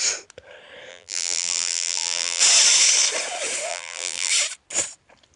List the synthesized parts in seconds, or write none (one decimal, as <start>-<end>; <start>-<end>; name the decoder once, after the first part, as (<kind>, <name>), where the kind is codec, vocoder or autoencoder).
0.9-2.4 (vocoder, BigVGAN v2); 3.7-4.3